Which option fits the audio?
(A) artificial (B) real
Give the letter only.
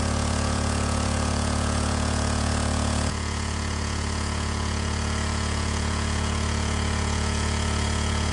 A